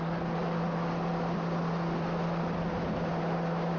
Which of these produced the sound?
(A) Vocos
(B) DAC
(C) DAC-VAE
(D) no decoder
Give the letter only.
D